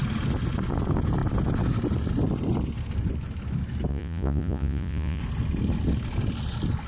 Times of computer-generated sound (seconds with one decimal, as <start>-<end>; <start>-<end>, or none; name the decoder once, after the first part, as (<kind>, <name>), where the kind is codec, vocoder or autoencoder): 3.9-5.2 (vocoder, Vocos)